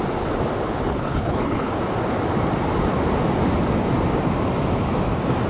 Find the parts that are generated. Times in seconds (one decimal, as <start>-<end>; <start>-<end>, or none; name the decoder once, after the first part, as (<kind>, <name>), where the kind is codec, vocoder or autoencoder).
0.9-1.8 (codec, HILCodec)